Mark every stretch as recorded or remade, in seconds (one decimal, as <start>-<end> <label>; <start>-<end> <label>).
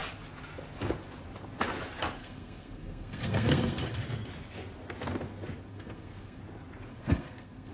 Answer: 0.0-2.2 recorded; 2.2-4.0 remade; 4.0-5.7 recorded; 5.7-6.4 remade; 6.4-6.9 recorded; 6.9-7.7 remade